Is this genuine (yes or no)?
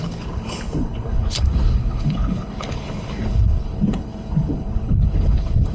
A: no